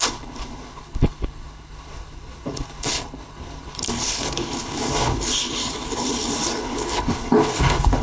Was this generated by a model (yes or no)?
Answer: yes